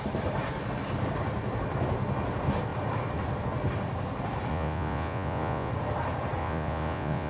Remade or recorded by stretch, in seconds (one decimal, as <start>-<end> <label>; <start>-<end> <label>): 0.0-4.5 recorded; 4.5-5.7 remade; 5.7-6.4 recorded; 6.4-7.3 remade